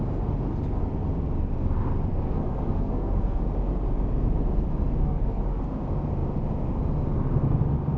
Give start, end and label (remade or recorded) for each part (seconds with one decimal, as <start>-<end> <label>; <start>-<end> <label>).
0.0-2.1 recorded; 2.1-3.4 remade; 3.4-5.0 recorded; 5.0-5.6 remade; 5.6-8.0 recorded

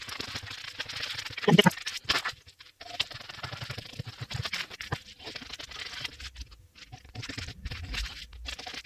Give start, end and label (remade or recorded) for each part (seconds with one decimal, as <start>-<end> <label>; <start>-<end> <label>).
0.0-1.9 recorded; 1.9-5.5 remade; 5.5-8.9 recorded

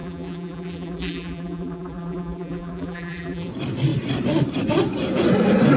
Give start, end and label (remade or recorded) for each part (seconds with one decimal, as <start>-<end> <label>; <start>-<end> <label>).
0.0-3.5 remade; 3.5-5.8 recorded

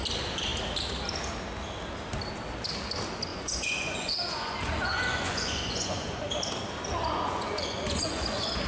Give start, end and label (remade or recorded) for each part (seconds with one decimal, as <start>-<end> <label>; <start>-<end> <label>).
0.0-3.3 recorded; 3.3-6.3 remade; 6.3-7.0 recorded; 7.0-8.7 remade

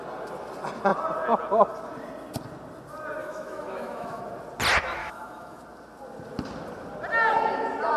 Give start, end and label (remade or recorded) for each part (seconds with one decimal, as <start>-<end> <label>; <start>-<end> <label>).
0.0-3.2 recorded; 3.2-4.2 remade; 4.2-5.0 recorded; 5.0-5.6 remade; 5.6-8.0 recorded

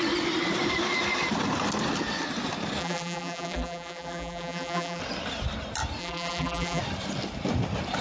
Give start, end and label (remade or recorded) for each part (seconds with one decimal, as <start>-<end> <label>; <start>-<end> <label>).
0.0-2.8 recorded; 2.8-5.0 remade; 5.0-6.0 recorded; 6.0-6.8 remade; 6.8-8.0 recorded